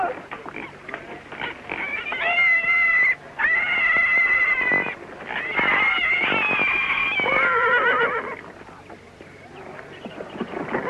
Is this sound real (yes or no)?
yes